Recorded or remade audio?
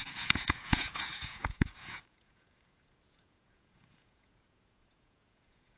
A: remade